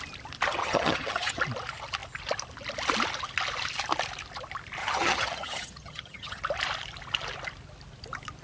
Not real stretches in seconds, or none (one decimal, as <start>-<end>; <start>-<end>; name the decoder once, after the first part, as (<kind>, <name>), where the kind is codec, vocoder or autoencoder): 0.6-1.4 (vocoder, HiFi-GAN); 4.8-6.4